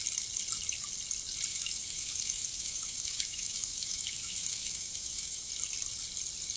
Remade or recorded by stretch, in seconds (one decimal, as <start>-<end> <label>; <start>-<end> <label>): 0.0-1.5 recorded; 1.5-5.5 remade; 5.5-6.6 recorded